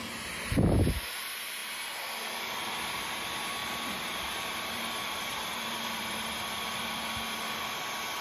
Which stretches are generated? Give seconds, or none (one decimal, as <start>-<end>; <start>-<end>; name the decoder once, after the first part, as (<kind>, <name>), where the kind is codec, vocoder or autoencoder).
3.6-7.0 (vocoder, BigVGAN v2)